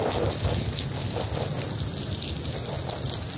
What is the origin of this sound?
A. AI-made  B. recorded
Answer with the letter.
B